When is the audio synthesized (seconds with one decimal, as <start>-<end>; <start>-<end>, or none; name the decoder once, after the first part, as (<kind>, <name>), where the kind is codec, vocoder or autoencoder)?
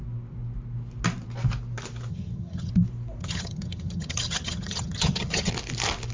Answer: 2.1-2.7 (vocoder, HiFi-GAN); 3.2-5.5